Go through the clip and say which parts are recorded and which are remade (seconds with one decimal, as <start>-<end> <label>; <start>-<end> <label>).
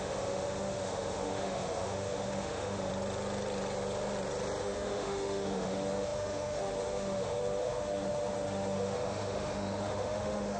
0.0-2.9 remade; 2.9-4.6 recorded; 4.6-10.6 remade